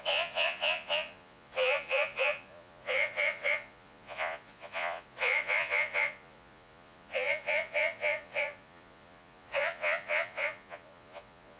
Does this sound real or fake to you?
fake